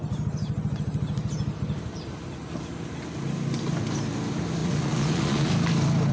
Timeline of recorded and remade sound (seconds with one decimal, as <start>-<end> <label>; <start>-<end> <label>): 0.0-4.6 recorded; 4.6-5.5 remade; 5.5-6.1 recorded